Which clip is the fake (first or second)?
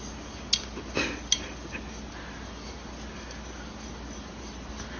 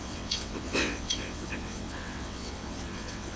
second